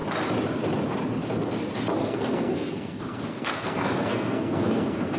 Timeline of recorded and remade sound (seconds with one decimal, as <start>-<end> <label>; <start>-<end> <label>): 0.0-2.0 recorded; 2.0-5.2 remade